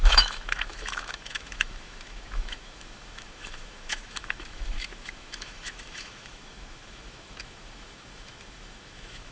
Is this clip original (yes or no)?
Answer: no